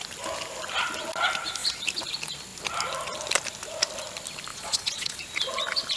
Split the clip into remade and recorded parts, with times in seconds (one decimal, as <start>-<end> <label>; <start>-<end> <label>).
0.0-4.5 recorded; 4.5-5.2 remade; 5.2-6.0 recorded